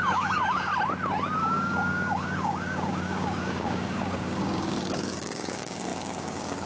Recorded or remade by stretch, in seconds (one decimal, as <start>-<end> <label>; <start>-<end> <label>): 0.0-0.7 remade; 0.7-1.4 recorded; 1.4-6.7 remade